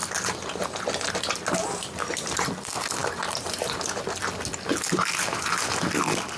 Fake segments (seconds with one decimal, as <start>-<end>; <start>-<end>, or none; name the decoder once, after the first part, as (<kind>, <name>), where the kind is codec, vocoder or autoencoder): none